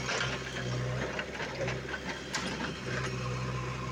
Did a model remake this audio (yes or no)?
no